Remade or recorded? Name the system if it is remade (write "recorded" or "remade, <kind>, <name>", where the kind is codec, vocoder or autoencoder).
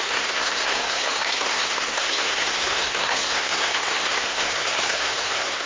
remade, codec, SNAC